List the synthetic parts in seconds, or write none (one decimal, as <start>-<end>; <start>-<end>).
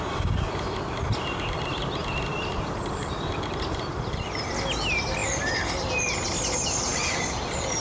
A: 2.0-3.1; 6.9-7.8